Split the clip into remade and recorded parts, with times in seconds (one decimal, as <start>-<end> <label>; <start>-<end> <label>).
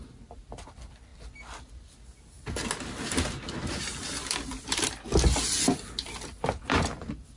0.0-7.4 recorded